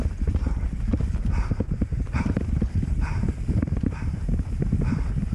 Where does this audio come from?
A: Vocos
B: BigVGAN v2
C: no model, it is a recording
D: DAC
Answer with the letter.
B